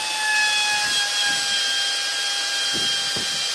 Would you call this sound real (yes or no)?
yes